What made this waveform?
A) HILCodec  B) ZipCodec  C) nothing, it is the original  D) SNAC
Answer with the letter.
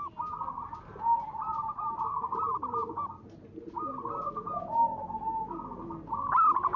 C